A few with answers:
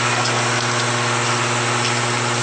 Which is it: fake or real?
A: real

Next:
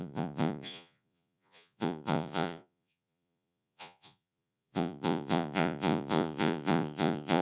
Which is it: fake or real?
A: fake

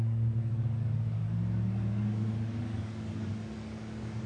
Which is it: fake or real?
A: fake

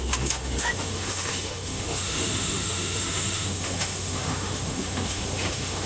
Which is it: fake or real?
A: fake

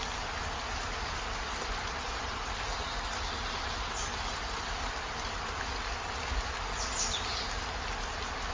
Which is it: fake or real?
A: real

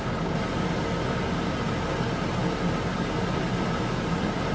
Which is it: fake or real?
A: real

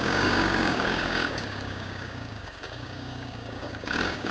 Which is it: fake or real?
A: fake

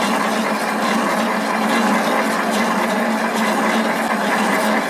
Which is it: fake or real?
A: real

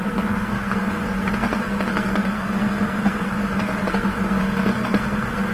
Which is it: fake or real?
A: fake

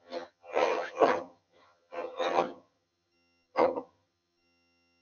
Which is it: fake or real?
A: fake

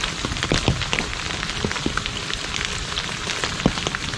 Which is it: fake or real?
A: real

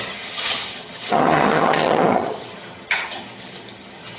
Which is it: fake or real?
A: fake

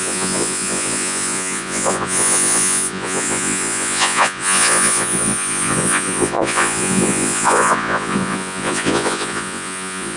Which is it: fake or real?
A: fake